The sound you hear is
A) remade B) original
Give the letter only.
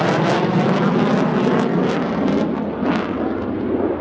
B